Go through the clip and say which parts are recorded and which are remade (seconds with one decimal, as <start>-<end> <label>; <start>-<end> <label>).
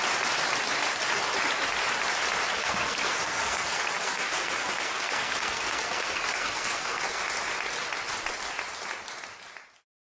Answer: 0.0-2.6 recorded; 2.6-7.2 remade; 7.2-10.0 recorded